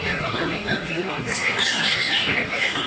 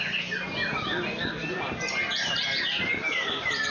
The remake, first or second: first